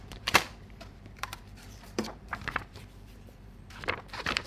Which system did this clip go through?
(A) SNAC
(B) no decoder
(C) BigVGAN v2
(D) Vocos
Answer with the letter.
C